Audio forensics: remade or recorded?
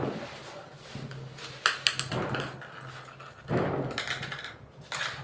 recorded